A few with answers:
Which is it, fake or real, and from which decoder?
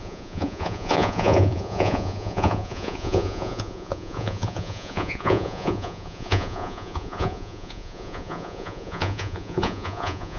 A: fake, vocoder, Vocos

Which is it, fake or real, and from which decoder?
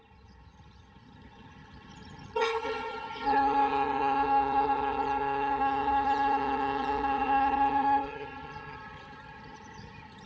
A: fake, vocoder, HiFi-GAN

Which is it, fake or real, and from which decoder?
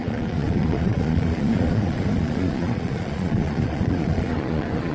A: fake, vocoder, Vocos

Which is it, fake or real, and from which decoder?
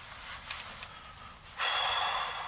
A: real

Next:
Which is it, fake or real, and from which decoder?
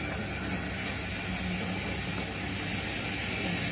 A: real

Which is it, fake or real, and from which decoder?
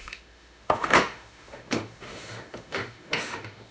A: fake, autoencoder, DAC-VAE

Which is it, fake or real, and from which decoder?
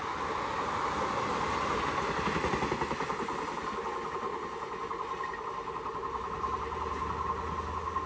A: real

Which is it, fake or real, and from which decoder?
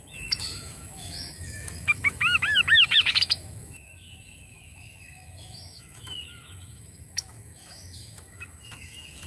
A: fake, autoencoder, DAC-VAE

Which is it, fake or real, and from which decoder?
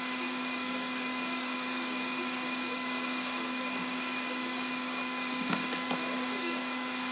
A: fake, codec, DAC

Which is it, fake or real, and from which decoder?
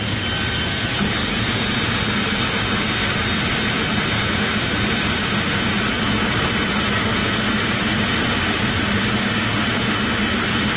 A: real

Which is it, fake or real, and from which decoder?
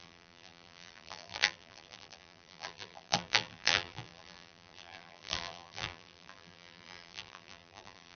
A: fake, vocoder, BigVGAN v2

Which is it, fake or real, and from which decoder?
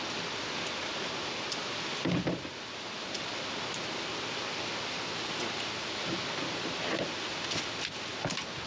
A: real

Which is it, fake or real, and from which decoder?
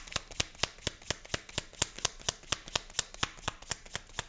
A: real